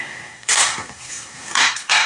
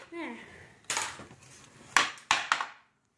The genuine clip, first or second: second